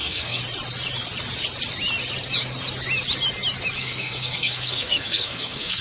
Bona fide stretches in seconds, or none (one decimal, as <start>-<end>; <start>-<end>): 0.4-3.8